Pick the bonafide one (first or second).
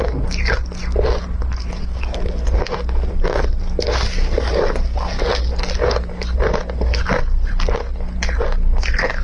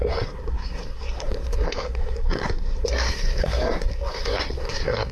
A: first